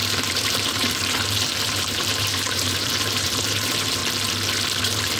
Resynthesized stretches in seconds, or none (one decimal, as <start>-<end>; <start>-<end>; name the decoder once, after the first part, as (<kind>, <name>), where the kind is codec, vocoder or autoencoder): 0.0-4.0 (vocoder, BigVGAN v2); 4.8-5.2